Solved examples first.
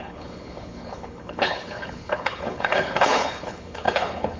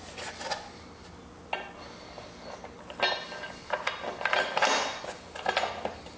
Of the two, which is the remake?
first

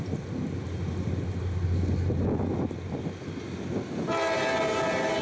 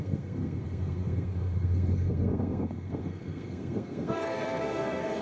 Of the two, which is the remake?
second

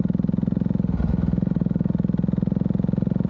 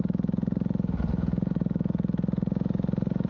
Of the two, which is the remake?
second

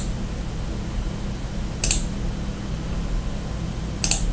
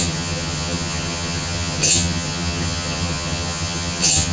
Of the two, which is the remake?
second